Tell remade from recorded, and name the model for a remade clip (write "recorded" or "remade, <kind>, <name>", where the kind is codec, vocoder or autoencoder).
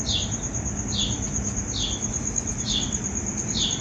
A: recorded